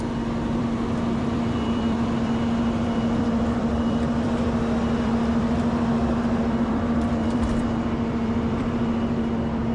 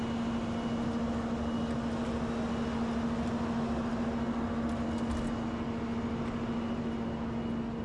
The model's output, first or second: first